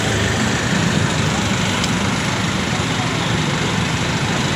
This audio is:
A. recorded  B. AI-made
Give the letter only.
A